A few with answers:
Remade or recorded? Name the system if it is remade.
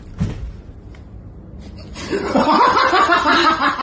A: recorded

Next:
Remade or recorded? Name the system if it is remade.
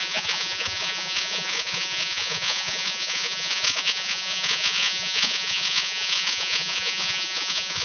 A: remade, vocoder, Vocos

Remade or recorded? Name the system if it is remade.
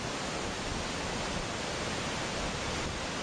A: recorded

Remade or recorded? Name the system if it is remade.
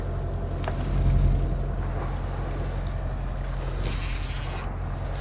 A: recorded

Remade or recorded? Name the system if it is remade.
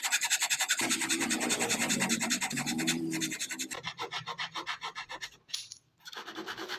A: remade, vocoder, BigVGAN v2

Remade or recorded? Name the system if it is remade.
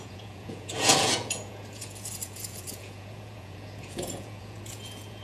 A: remade, vocoder, Vocos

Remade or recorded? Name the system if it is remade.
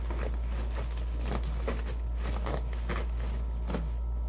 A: recorded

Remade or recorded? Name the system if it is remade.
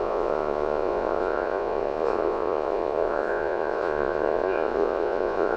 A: remade, vocoder, Vocos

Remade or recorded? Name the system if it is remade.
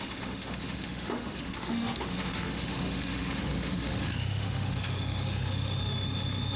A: remade, autoencoder, DAC-VAE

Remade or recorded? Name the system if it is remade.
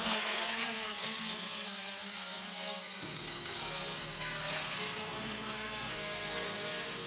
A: remade, codec, SNAC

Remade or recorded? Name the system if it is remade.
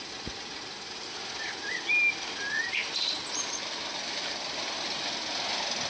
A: recorded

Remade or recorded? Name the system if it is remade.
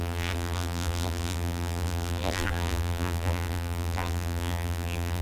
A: remade, vocoder, BigVGAN v2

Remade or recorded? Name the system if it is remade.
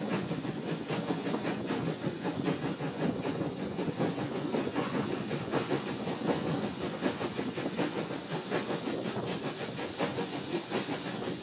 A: remade, vocoder, Vocos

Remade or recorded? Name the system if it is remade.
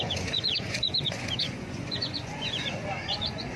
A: remade, vocoder, Vocos